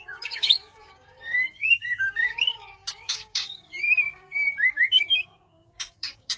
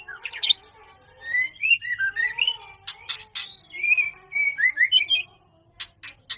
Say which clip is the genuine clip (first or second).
second